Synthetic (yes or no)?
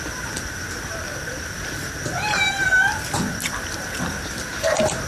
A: no